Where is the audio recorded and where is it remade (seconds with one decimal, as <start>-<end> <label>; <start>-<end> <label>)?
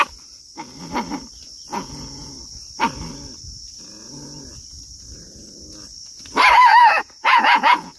0.0-1.7 recorded; 1.7-2.3 remade; 2.3-6.6 recorded; 6.6-8.0 remade